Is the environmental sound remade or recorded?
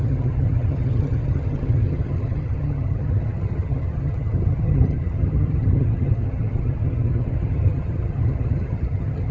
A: remade